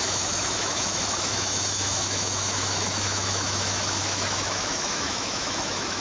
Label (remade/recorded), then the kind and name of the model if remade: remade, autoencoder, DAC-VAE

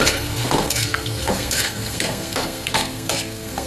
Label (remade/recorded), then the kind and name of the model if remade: remade, codec, SNAC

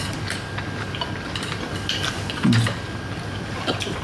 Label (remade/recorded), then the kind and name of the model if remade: recorded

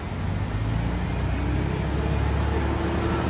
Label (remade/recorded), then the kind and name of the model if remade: recorded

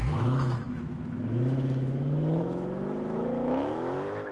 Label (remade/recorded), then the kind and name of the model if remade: remade, autoencoder, DAC-VAE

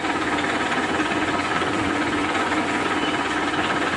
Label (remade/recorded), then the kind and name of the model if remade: remade, vocoder, Vocos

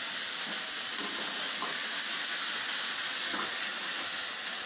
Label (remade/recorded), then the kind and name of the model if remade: recorded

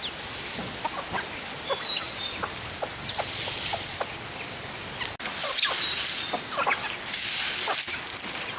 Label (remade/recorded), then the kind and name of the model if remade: recorded